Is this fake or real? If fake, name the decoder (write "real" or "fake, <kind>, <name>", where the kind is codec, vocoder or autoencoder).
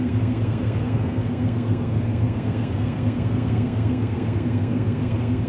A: fake, codec, SNAC